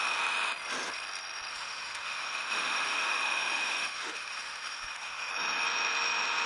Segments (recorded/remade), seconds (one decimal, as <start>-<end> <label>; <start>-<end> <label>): 0.0-1.5 recorded; 1.5-5.3 remade; 5.3-6.5 recorded